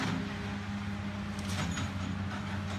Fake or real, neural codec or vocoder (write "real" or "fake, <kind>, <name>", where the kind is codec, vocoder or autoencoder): real